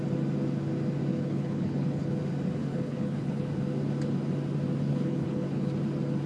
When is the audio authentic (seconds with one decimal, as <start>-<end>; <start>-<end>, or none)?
0.0-1.1; 2.2-2.7; 3.5-4.9; 5.7-6.3